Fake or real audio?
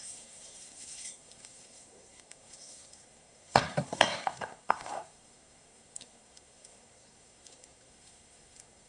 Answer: fake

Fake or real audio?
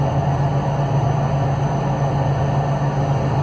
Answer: real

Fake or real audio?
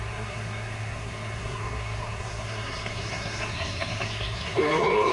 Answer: fake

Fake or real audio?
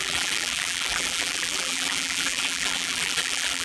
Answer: fake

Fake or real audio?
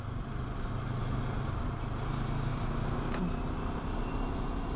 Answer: real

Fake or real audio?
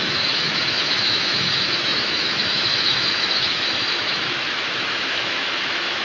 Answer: fake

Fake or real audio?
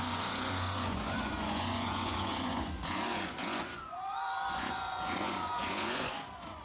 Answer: fake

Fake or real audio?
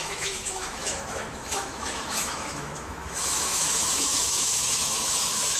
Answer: fake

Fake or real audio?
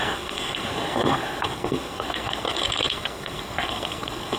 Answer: fake